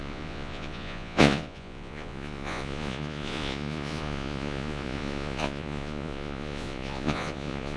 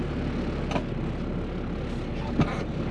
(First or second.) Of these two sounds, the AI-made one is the first